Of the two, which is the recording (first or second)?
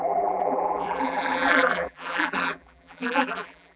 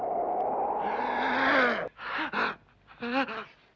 second